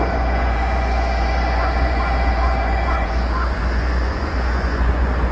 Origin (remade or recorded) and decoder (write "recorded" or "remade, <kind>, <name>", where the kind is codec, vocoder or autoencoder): remade, vocoder, Vocos